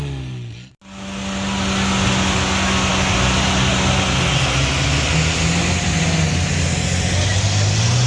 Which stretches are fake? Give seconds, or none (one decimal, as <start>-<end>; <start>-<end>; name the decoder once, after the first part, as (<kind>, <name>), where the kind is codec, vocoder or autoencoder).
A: none